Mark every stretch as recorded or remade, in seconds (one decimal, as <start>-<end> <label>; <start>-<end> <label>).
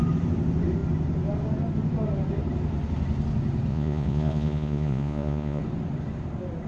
0.0-3.7 recorded; 3.7-5.6 remade; 5.6-6.7 recorded